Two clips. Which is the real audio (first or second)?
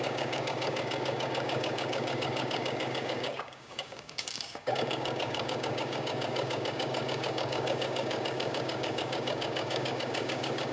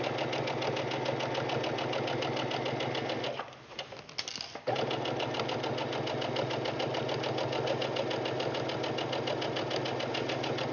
second